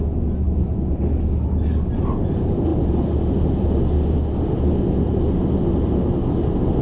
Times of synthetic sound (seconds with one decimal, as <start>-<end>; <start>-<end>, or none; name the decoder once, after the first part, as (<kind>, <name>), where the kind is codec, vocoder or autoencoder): none